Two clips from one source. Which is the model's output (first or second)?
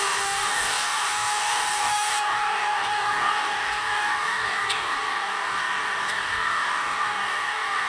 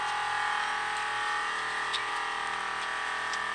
first